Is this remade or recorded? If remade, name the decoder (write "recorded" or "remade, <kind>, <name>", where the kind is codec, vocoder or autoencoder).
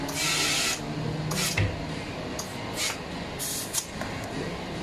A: recorded